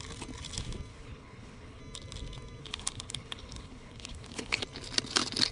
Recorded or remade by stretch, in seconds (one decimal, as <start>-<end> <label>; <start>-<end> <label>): 0.0-0.9 recorded; 0.9-1.8 remade; 1.8-2.6 recorded; 2.6-4.6 remade; 4.6-5.5 recorded